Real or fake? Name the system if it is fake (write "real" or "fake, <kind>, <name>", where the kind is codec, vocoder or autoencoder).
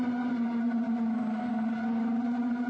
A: real